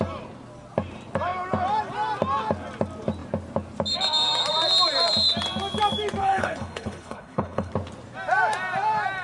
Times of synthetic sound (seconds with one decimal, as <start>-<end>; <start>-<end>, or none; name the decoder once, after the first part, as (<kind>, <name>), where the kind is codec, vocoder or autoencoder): 6.2-7.7 (codec, HILCodec)